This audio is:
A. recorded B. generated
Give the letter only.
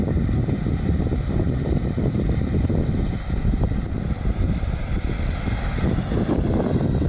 B